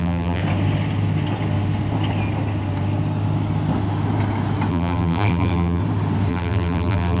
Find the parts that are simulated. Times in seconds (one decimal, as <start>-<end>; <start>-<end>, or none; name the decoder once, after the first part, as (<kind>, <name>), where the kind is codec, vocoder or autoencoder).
0.0-0.4 (vocoder, BigVGAN v2); 4.7-5.8; 6.3-7.2